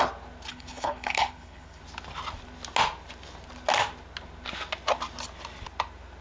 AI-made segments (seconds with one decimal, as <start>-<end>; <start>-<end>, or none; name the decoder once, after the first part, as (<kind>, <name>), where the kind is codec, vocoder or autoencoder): 0.5-1.8 (codec, HILCodec)